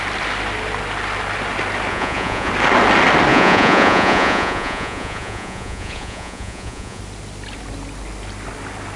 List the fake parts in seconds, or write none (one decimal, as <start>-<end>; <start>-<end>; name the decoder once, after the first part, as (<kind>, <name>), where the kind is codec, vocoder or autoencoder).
1.9-2.5 (vocoder, Vocos); 3.3-7.0